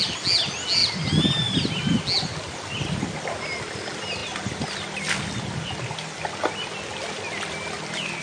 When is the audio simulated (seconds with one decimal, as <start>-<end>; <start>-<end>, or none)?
none